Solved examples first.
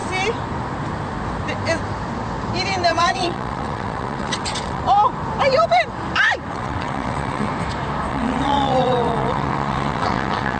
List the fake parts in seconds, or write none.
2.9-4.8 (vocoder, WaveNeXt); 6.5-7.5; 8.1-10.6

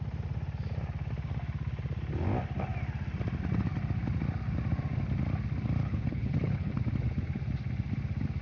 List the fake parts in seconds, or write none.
5.8-6.7 (codec, HILCodec)

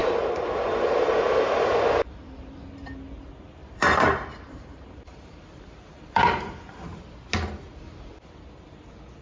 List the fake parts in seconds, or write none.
0.0-1.7 (vocoder, BigVGAN v2); 3.6-7.0